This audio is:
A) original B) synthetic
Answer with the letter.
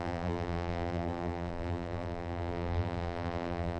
B